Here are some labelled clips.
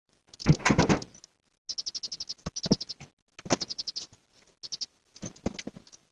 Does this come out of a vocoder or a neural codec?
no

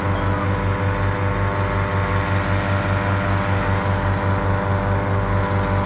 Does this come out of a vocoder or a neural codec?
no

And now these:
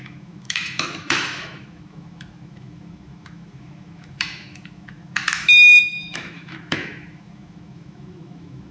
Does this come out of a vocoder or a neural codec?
yes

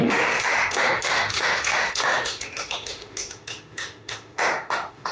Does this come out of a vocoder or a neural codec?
yes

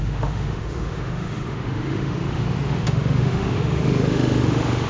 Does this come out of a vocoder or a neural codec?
yes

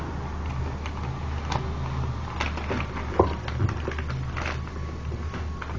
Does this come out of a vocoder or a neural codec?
no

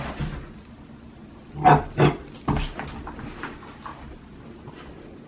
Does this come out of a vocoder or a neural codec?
no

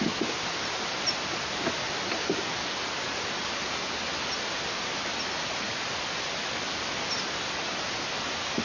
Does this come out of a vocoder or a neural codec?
no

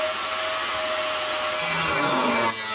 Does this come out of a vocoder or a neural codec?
no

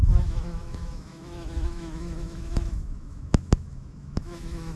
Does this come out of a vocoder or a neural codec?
yes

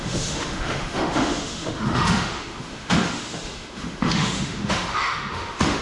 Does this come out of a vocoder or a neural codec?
yes